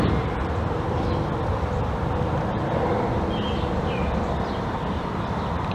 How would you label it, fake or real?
real